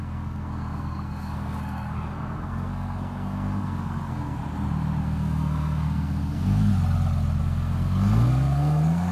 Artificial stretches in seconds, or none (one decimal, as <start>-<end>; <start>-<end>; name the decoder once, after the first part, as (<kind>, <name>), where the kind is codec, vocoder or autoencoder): 0.0-4.4 (codec, SNAC); 5.0-6.7; 7.4-9.1